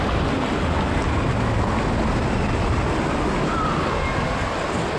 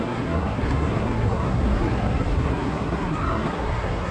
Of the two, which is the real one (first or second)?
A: first